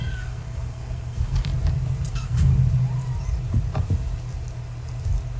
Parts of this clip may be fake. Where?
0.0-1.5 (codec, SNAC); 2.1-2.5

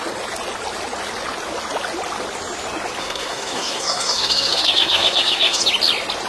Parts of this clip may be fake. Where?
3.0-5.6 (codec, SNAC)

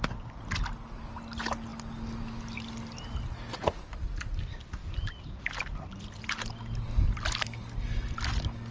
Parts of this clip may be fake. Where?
none

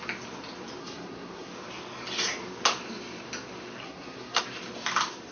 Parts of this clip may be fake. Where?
0.8-1.5 (codec, SNAC); 3.8-4.4